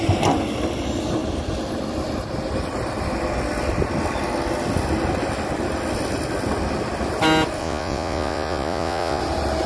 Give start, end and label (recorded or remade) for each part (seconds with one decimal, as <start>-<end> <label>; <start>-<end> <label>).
0.0-7.6 recorded; 7.6-9.2 remade; 9.2-9.7 recorded

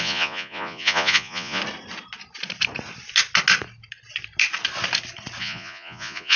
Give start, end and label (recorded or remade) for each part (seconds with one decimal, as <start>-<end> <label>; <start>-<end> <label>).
0.0-1.6 remade; 1.6-5.4 recorded; 5.4-6.4 remade

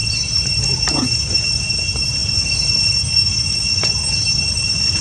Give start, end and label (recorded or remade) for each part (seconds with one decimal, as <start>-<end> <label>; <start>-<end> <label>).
0.0-0.8 remade; 0.8-2.2 recorded; 2.2-2.9 remade; 2.9-5.0 recorded

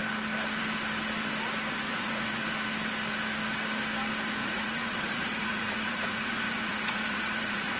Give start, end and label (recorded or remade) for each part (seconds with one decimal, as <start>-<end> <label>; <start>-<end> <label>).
0.0-1.9 recorded; 1.9-2.4 remade; 2.4-4.4 recorded; 4.4-7.8 remade

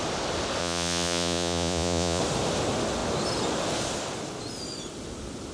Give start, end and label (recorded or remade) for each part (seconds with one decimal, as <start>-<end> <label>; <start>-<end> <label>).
0.0-0.6 recorded; 0.6-2.2 remade; 2.2-5.5 recorded

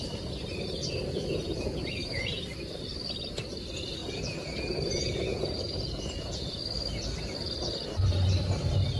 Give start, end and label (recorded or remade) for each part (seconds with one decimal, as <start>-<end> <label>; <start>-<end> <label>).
0.0-0.8 recorded; 0.8-2.3 remade; 2.3-4.0 recorded; 4.0-6.6 remade; 6.6-9.0 recorded

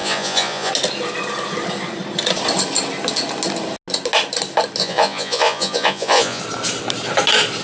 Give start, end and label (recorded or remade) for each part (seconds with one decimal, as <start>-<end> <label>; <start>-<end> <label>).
0.0-0.7 remade; 0.7-4.8 recorded; 4.8-6.4 remade; 6.4-7.6 recorded